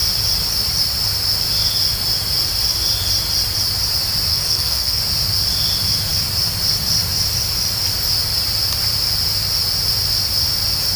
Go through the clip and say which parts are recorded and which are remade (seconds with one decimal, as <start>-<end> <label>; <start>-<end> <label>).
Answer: 0.0-4.3 recorded; 4.3-5.0 remade; 5.0-11.0 recorded